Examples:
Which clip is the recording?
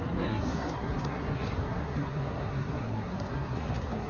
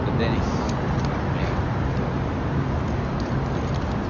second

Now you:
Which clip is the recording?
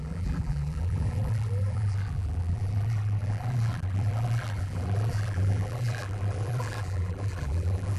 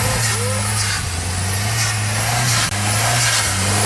second